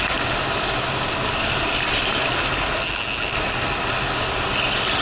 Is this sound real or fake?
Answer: real